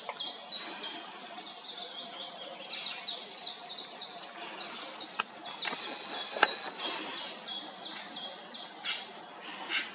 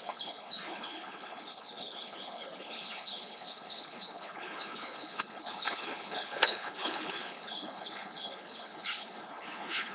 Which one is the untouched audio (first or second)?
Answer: first